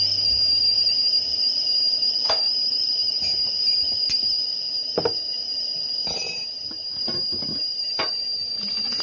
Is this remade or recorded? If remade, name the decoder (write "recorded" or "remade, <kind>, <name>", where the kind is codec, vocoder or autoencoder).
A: recorded